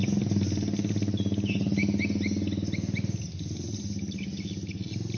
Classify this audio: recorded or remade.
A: recorded